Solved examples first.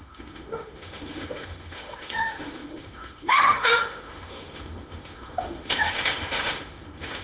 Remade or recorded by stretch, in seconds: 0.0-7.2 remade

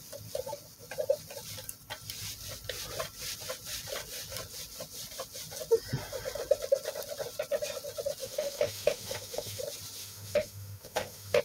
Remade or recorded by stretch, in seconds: 0.0-8.2 recorded; 8.2-9.6 remade; 9.6-10.0 recorded; 10.0-11.4 remade

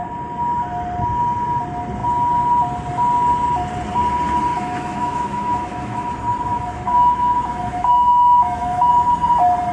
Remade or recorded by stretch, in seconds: 0.0-4.5 recorded; 4.5-6.1 remade; 6.1-6.5 recorded; 6.5-8.9 remade; 8.9-9.7 recorded

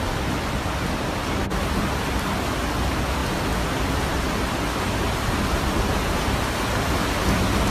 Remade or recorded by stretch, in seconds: 0.0-7.7 recorded